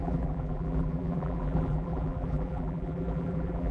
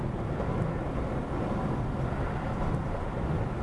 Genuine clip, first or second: second